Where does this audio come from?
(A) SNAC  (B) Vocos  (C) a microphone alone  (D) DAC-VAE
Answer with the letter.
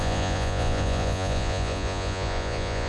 B